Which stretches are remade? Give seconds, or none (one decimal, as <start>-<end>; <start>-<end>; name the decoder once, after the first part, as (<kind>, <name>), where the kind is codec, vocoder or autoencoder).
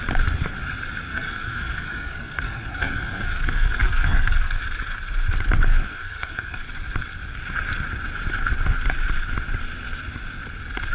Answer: 1.1-4.6 (codec, SNAC); 5.7-6.6